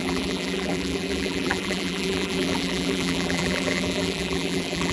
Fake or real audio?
fake